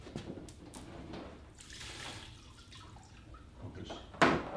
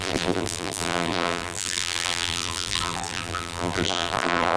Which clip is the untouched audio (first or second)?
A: first